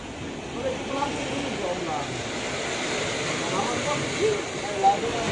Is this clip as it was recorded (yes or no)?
yes